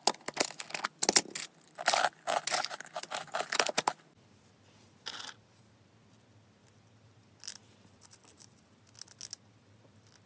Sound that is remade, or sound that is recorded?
recorded